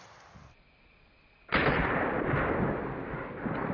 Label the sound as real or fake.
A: real